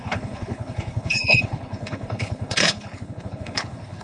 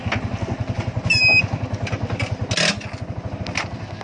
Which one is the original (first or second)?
second